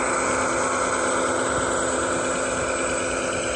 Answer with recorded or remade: recorded